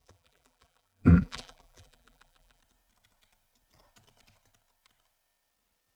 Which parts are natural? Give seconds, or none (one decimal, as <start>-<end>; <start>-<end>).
2.6-6.0